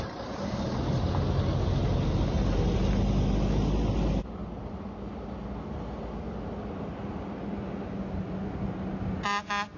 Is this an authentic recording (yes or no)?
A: yes